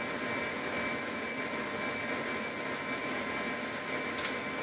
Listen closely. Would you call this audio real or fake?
real